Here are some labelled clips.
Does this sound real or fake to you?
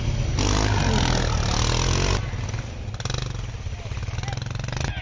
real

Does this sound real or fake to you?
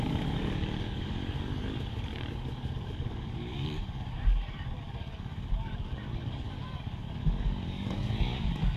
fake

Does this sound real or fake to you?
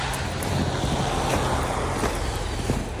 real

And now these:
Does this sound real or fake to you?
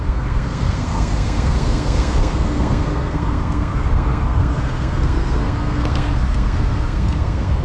fake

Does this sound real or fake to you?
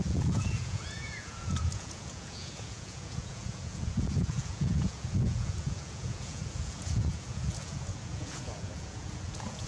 fake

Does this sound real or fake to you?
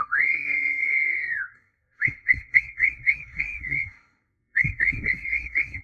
fake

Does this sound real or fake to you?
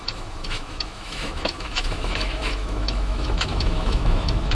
fake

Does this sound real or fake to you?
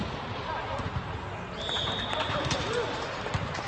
real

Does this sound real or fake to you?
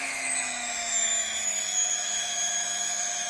fake